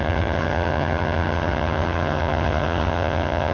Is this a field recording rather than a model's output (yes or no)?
no